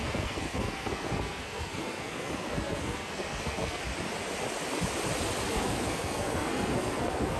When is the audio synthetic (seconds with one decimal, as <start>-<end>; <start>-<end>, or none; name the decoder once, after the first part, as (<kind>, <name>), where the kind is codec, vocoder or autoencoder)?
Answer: 0.0-3.8 (codec, SNAC); 5.5-7.4

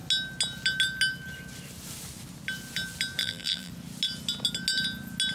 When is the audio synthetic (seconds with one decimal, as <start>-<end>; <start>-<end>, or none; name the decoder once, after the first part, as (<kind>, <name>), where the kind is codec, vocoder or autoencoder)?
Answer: 3.2-3.7 (vocoder, BigVGAN v2)

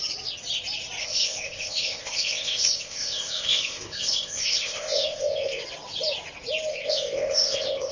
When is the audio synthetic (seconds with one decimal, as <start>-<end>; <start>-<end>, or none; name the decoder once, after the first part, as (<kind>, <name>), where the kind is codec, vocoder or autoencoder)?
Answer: 1.0-5.6 (codec, ZipCodec); 6.7-7.9

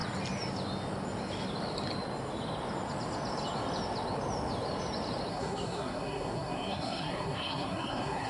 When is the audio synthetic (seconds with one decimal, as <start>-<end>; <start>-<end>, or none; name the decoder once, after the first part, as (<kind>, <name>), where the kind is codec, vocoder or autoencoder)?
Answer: 5.3-8.3 (codec, SNAC)

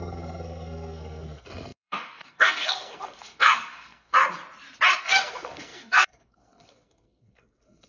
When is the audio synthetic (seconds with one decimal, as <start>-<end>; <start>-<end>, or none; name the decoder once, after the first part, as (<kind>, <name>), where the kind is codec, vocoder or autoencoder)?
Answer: 0.0-4.2 (codec, SNAC); 5.0-7.9

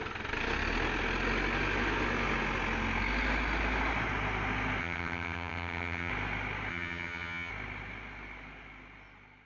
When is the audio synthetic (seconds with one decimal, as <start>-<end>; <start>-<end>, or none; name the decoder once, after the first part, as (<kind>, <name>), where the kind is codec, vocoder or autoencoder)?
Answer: 4.8-6.1 (vocoder, HiFi-GAN); 6.7-7.5

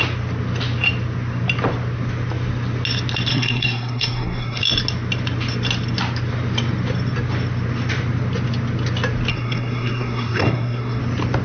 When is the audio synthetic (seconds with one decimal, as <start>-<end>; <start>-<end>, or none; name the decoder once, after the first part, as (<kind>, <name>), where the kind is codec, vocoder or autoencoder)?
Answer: 3.3-4.6 (codec, SNAC); 9.3-11.0